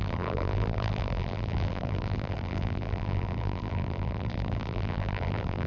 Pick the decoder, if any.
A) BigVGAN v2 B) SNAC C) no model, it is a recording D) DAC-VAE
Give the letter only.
A